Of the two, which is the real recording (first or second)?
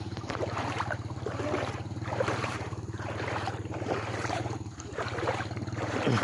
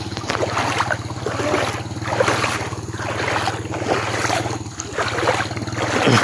second